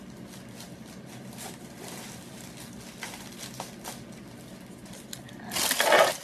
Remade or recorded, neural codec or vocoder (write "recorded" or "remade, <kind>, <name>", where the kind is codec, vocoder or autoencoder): recorded